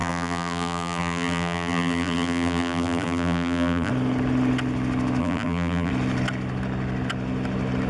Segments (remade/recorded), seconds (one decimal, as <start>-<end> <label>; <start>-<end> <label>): 0.0-3.9 remade; 3.9-5.2 recorded; 5.2-5.9 remade; 5.9-7.9 recorded